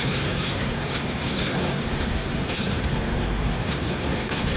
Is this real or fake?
fake